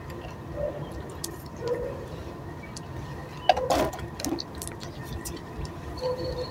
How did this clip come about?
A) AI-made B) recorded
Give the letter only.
B